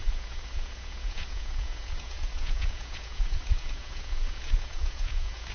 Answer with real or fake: fake